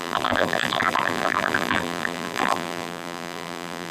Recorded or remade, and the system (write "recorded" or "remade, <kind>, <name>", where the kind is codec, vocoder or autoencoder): remade, vocoder, BigVGAN v2